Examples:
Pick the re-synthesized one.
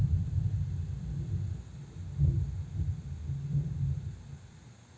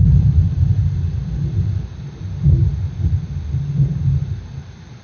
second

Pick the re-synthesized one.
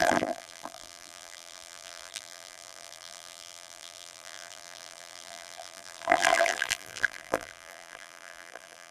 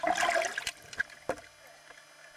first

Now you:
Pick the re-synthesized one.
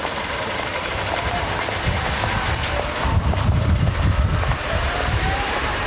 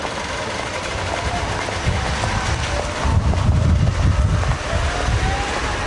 first